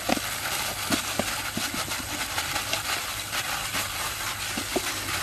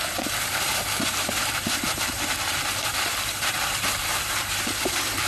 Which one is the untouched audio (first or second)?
first